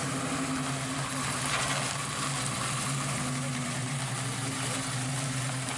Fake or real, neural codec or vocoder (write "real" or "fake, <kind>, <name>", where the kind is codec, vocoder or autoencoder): real